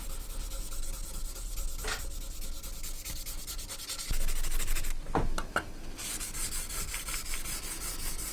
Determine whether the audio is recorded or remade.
recorded